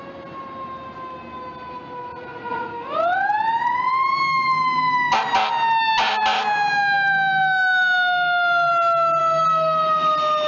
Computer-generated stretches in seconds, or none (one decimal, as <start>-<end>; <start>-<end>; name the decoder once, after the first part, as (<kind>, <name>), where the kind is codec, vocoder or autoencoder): 2.1-2.7 (vocoder, Vocos)